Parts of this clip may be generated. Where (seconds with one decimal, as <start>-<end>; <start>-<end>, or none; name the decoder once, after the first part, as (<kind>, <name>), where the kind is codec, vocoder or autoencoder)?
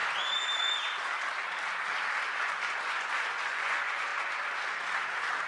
2.4-4.1 (vocoder, Vocos)